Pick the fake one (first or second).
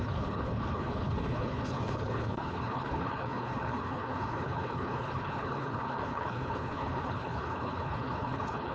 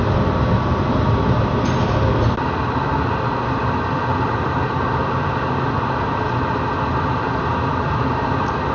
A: first